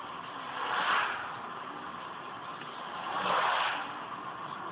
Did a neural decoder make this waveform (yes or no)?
no